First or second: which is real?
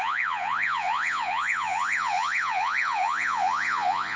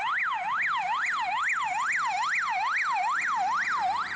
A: second